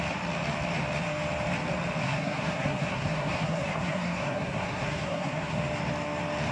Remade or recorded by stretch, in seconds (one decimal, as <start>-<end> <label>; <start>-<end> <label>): 0.0-2.0 recorded; 2.0-5.6 remade; 5.6-6.5 recorded